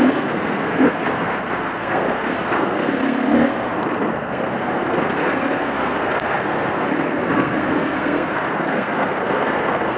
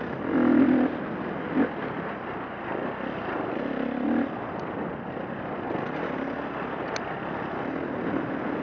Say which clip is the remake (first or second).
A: first